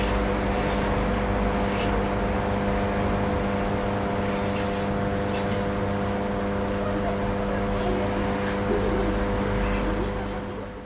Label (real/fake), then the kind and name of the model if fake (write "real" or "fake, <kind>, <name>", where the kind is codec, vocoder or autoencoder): real